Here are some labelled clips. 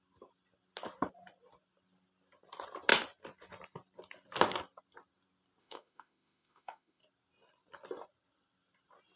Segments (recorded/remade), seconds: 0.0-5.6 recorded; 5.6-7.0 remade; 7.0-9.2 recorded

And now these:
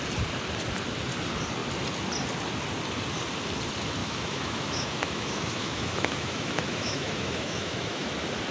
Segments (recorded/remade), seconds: 0.0-4.0 recorded; 4.0-8.1 remade; 8.1-8.5 recorded

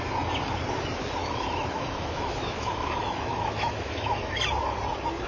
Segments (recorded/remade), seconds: 0.0-1.2 recorded; 1.2-4.4 remade; 4.4-5.3 recorded

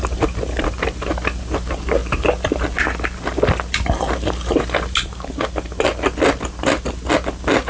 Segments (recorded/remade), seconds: 0.0-7.7 recorded

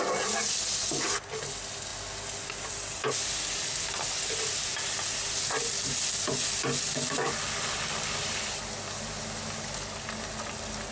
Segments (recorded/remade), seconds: 0.0-10.9 recorded

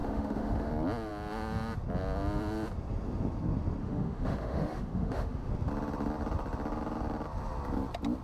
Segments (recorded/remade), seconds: 0.0-0.7 remade; 0.7-3.8 recorded; 3.8-5.5 remade; 5.5-8.2 recorded